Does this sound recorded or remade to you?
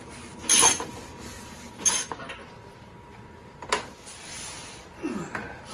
recorded